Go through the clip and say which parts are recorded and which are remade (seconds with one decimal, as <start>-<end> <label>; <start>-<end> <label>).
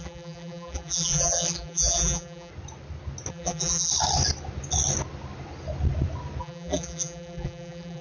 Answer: 0.0-2.5 remade; 2.5-3.3 recorded; 3.3-3.9 remade; 3.9-6.4 recorded; 6.4-8.0 remade